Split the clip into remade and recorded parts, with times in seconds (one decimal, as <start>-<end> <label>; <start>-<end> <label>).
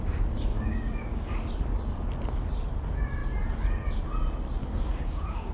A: 0.0-0.5 recorded; 0.5-1.3 remade; 1.3-4.6 recorded; 4.6-5.5 remade